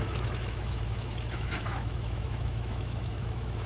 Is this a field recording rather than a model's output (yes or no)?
no